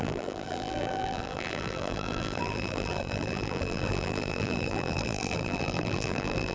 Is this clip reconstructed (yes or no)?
yes